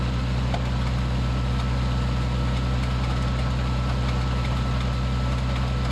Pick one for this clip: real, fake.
real